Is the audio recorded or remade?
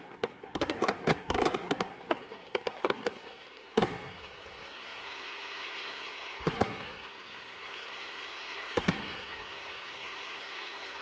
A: remade